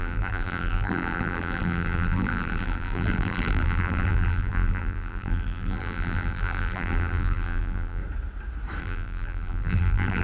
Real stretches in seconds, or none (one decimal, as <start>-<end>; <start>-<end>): 8.0-8.8